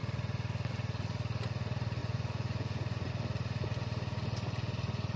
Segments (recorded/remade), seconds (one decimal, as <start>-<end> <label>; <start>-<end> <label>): 0.0-2.0 recorded; 2.0-3.1 remade; 3.1-5.2 recorded